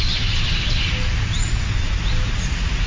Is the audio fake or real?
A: real